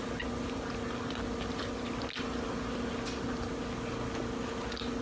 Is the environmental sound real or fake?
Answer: real